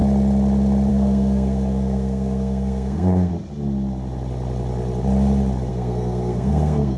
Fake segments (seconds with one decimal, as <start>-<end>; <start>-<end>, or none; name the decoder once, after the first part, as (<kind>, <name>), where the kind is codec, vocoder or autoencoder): 0.9-3.3 (codec, SNAC); 5.7-7.0